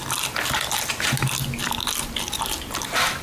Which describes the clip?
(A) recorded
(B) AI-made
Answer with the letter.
A